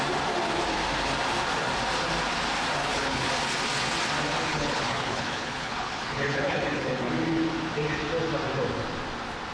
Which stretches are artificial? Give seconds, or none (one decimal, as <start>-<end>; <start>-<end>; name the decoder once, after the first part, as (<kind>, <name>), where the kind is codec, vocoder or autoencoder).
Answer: 2.8-3.3 (codec, HILCodec); 4.5-7.1